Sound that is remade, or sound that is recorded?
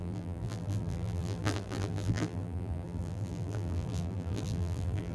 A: remade